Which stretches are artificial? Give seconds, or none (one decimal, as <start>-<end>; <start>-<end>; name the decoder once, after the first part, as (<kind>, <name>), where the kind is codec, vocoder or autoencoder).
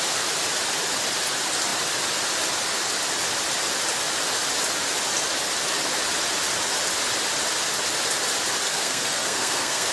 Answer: 8.7-9.9 (codec, SNAC)